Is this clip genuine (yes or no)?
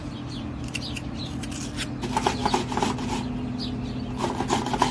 yes